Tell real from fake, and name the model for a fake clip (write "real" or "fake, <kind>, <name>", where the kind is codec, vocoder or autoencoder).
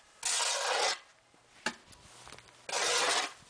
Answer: real